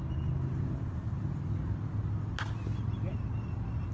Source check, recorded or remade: recorded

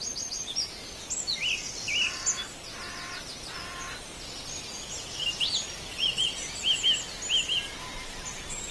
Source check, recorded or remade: recorded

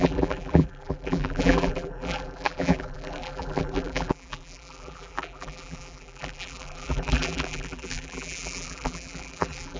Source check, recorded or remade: remade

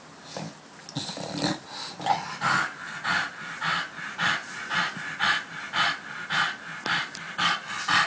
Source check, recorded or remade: recorded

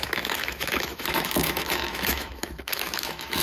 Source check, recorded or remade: remade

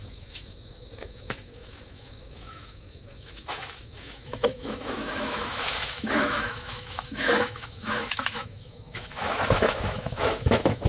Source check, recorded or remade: remade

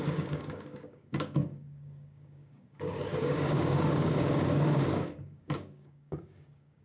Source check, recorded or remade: remade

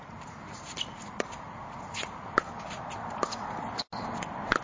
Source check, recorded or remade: recorded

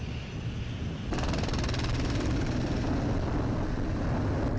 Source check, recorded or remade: recorded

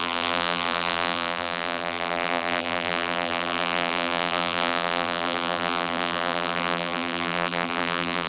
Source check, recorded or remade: remade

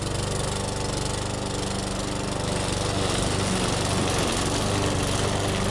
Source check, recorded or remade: recorded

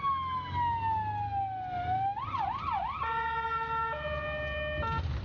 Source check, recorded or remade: recorded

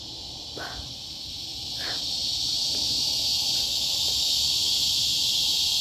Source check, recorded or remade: recorded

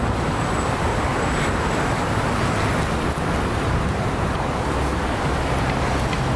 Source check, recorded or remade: recorded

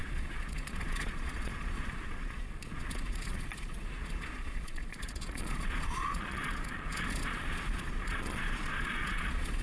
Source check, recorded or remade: remade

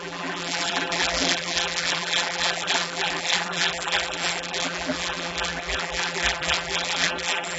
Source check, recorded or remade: remade